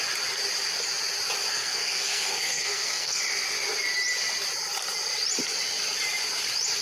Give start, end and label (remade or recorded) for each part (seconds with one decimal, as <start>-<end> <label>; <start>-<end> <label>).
0.0-1.4 recorded; 1.4-3.2 remade; 3.2-6.8 recorded